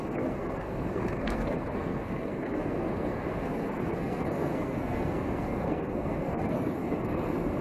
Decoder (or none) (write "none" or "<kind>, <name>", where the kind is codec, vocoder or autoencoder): codec, SNAC